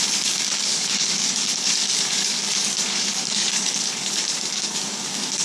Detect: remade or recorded remade